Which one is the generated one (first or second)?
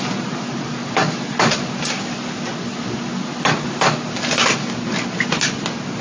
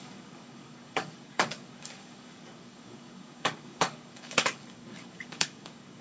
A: second